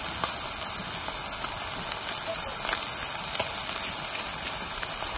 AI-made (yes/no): no